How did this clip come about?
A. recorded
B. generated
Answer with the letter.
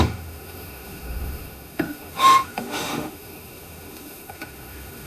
B